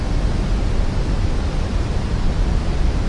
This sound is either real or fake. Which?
real